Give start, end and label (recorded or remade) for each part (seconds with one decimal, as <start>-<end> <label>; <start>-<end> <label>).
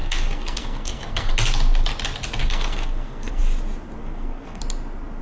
0.0-1.3 remade; 1.3-2.4 recorded; 2.4-3.4 remade; 3.4-4.0 recorded; 4.0-4.6 remade; 4.6-5.2 recorded